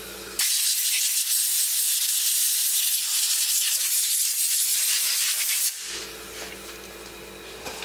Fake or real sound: real